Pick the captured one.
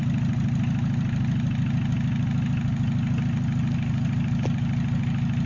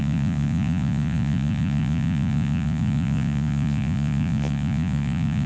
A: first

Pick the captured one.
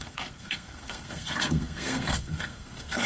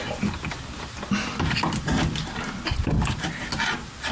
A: second